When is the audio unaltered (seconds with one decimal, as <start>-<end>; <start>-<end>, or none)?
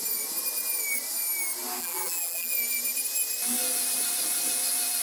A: 0.0-1.8; 2.5-5.0